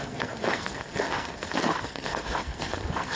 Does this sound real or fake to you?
fake